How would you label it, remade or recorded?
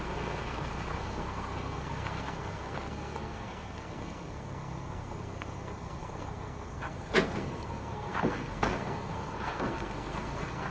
remade